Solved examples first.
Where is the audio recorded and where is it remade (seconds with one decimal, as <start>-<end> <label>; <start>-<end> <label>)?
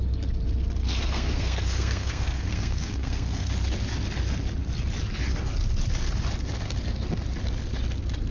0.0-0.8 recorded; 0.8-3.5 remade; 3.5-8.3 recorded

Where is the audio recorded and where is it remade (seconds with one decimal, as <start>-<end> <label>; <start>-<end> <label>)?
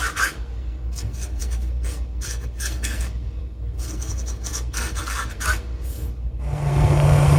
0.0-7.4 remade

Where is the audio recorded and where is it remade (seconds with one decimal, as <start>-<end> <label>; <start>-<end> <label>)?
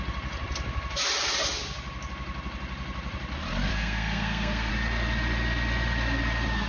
0.0-3.7 recorded; 3.7-4.7 remade; 4.7-6.7 recorded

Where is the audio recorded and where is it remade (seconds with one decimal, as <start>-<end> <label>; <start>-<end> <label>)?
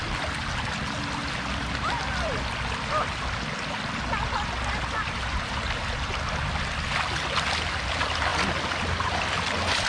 0.0-9.9 recorded